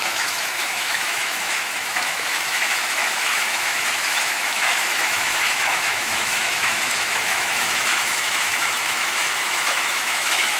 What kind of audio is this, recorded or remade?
remade